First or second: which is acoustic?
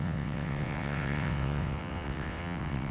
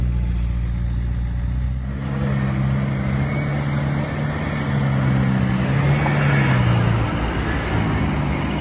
second